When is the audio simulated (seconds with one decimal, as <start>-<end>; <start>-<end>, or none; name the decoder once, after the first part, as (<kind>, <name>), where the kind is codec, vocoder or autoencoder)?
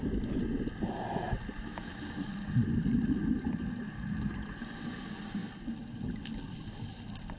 none